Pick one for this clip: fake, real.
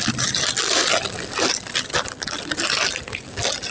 real